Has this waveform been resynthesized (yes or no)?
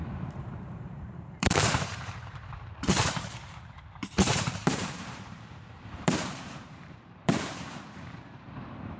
yes